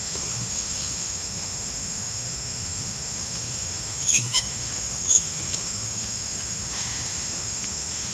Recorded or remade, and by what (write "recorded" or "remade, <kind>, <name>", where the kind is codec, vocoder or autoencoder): remade, autoencoder, DAC-VAE